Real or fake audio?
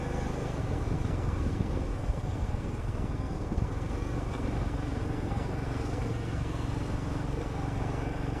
fake